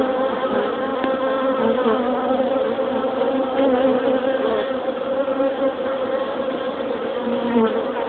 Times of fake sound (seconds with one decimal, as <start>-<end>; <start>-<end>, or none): 0.0-0.9; 3.0-3.9; 4.8-8.1

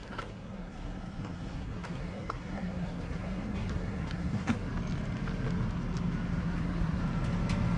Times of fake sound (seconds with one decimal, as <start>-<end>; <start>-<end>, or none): 0.0-4.7; 6.4-7.0